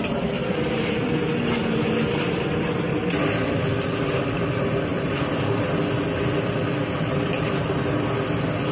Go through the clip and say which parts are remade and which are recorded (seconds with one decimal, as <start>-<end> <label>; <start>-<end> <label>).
0.0-8.7 recorded